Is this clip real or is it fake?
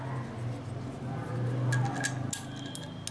real